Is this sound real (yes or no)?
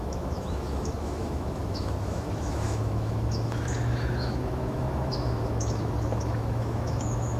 no